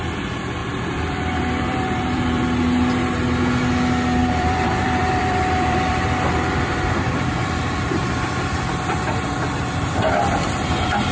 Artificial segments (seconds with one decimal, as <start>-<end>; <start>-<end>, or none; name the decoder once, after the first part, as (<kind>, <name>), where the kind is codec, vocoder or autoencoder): 0.6-2.4 (vocoder, BigVGAN v2); 4.2-8.6